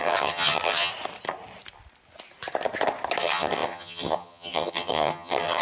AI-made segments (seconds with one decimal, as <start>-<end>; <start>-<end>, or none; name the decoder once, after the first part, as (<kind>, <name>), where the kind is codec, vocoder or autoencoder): 0.0-0.9 (vocoder, HiFi-GAN); 3.2-5.6